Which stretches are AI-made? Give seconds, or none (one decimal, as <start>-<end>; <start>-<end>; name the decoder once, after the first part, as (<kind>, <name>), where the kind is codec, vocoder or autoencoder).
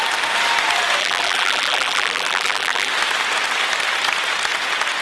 1.0-2.9 (vocoder, BigVGAN v2)